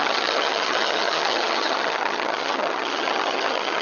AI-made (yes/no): yes